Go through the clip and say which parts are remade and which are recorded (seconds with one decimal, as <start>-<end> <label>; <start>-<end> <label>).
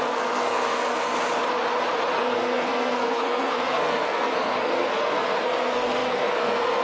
0.0-1.1 remade; 1.1-2.1 recorded; 2.1-6.8 remade